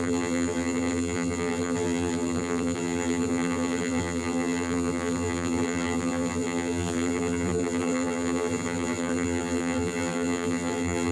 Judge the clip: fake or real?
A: fake